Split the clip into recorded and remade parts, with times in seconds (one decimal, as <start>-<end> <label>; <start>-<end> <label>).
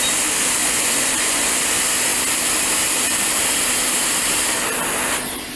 0.0-0.6 recorded; 0.6-1.5 remade; 1.5-5.6 recorded